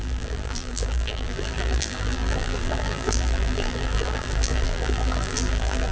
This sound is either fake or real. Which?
fake